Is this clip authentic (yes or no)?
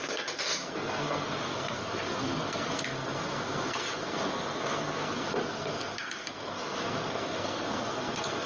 no